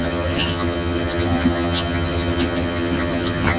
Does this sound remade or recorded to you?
remade